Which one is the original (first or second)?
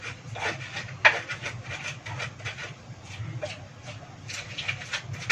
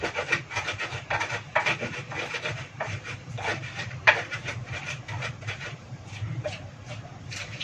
first